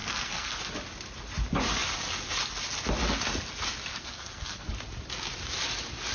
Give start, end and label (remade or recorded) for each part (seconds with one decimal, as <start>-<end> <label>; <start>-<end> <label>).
0.0-0.5 remade; 0.5-3.9 recorded; 3.9-4.7 remade; 4.7-6.1 recorded